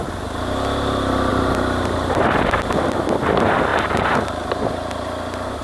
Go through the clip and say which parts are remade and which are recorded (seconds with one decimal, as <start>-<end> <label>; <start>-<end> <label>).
0.0-1.3 recorded; 1.3-2.4 remade; 2.4-3.7 recorded; 3.7-5.6 remade